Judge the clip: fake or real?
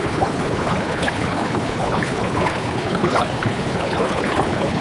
fake